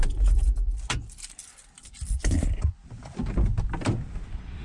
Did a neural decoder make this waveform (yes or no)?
no